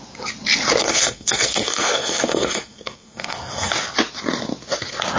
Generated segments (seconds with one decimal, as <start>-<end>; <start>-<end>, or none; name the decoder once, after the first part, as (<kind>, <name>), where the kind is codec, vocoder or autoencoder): 0.8-3.7 (codec, SNAC)